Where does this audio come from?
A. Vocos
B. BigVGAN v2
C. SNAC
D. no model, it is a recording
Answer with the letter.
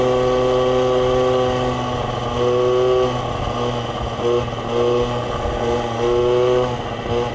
D